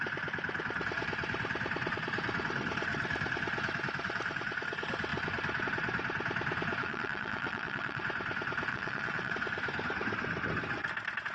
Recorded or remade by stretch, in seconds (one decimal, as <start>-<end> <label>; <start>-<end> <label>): 0.0-6.8 recorded; 6.8-8.0 remade; 8.0-8.7 recorded; 8.7-9.3 remade; 9.3-11.3 recorded